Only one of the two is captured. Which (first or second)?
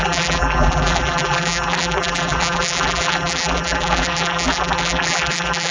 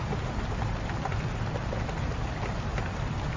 second